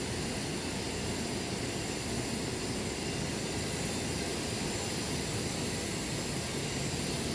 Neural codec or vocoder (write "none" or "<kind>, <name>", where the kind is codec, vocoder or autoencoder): none